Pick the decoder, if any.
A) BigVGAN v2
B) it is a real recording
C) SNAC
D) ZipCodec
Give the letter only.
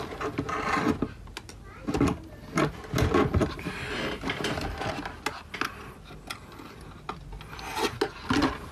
B